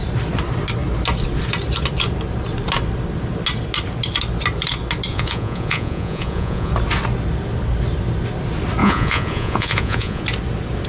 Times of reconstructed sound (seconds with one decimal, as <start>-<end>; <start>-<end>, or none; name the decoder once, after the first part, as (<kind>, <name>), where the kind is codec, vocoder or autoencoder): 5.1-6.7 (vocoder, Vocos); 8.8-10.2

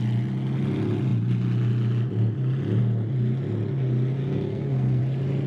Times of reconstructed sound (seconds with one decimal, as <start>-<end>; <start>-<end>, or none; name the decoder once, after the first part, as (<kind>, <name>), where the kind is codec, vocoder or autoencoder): 4.2-5.0 (codec, SNAC)

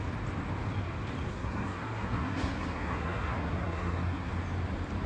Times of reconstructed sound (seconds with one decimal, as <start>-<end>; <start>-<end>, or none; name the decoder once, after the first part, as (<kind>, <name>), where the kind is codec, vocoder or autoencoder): 1.3-4.3 (codec, SNAC)